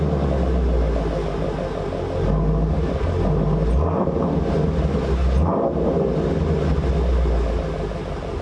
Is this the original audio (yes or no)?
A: yes